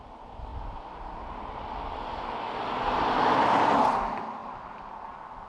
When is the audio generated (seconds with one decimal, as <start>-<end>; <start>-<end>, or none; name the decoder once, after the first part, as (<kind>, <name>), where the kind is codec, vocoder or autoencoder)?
none